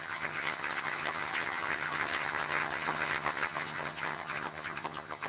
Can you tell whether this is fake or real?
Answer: fake